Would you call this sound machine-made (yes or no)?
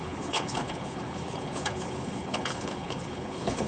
yes